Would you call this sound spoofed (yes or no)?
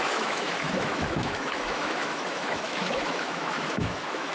yes